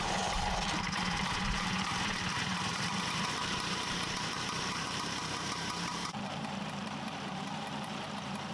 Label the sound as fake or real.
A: fake